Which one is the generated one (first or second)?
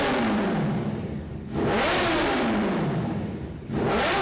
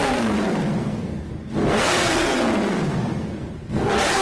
second